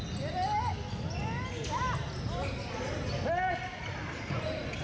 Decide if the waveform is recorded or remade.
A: recorded